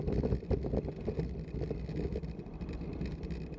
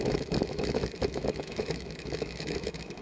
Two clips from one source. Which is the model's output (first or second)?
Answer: second